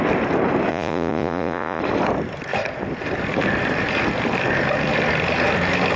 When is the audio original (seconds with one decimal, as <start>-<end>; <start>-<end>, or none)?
0.0-0.7; 1.8-6.0